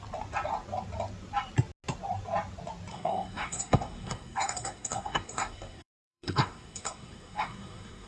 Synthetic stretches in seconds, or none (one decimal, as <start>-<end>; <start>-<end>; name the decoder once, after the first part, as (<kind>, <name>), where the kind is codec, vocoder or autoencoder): 2.9-8.1 (codec, SNAC)